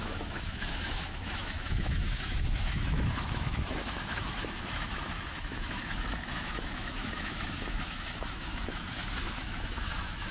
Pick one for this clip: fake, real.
fake